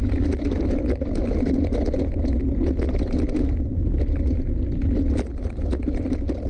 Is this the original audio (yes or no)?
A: yes